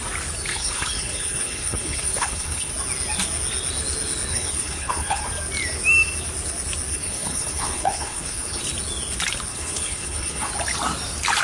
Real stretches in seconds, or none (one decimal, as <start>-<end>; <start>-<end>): 0.0-0.5; 2.7-4.3; 5.2-6.9; 8.6-9.5; 10.5-11.4